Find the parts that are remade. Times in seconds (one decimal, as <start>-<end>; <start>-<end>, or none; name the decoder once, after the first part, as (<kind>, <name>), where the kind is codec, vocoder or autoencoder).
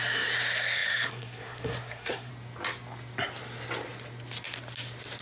0.0-2.3 (codec, SNAC)